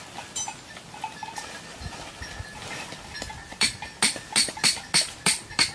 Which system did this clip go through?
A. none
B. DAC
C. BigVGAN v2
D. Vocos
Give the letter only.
A